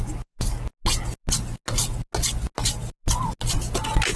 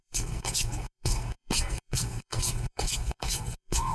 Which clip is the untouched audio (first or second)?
first